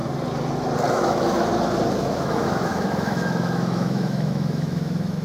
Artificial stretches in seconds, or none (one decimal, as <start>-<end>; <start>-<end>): 0.9-1.5; 2.0-5.2